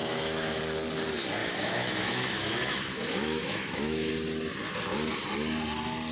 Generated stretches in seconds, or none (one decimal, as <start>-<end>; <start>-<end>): 0.0-0.6; 1.4-4.1